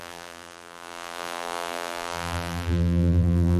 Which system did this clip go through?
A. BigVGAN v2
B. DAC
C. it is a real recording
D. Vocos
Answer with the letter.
A